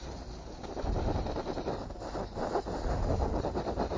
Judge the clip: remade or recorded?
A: recorded